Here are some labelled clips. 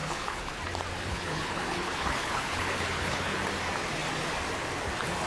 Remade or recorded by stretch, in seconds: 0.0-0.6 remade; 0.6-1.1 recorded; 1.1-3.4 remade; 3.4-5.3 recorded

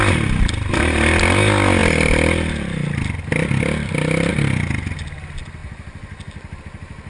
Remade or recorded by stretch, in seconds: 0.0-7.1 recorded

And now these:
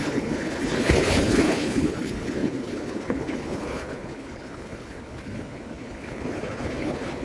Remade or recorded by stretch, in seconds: 0.0-7.2 remade